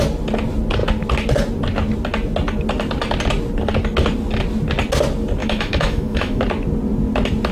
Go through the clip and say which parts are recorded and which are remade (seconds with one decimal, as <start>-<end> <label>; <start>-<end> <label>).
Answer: 0.0-5.4 recorded; 5.4-6.4 remade; 6.4-7.5 recorded